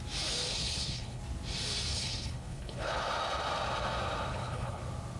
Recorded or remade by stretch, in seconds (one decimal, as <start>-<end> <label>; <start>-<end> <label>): 0.0-0.5 recorded; 0.5-1.2 remade; 1.2-1.9 recorded; 1.9-3.0 remade; 3.0-4.3 recorded; 4.3-4.8 remade; 4.8-5.2 recorded